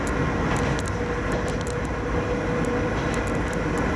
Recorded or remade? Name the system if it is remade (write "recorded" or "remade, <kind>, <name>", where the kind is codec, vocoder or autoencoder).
recorded